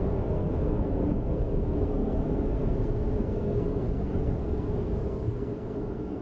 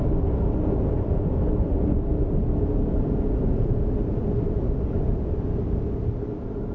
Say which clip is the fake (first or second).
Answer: first